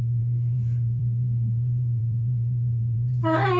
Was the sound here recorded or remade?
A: remade